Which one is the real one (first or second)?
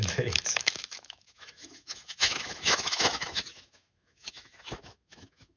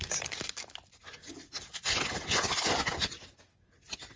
second